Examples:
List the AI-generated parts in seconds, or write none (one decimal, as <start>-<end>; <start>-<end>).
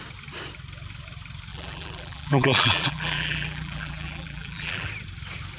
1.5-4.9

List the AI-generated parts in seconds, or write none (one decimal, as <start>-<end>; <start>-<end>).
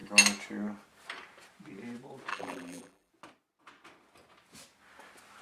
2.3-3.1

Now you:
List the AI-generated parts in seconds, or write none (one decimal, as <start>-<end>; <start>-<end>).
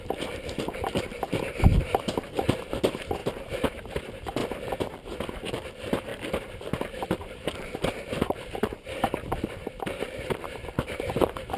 0.0-4.4; 5.5-6.1; 6.8-11.6